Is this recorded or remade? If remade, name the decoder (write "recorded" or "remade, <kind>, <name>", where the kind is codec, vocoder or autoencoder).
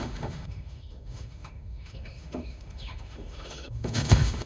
remade, autoencoder, DAC-VAE